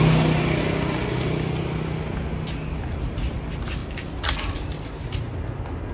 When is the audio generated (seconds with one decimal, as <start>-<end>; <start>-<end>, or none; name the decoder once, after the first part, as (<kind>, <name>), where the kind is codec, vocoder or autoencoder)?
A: none